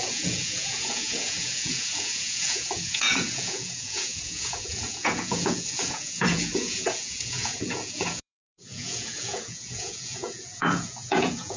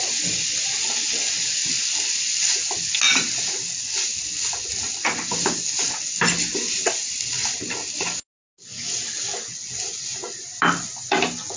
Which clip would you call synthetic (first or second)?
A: first